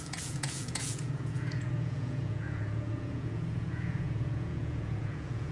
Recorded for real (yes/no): no